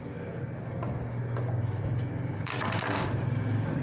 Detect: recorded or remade remade